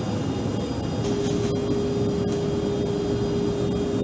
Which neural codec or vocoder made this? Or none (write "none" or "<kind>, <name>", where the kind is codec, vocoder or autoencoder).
none